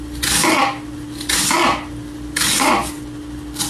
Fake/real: real